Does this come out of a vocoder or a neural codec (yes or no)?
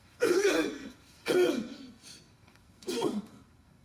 yes